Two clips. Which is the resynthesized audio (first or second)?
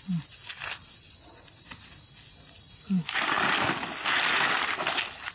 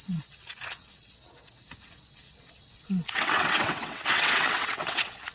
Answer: second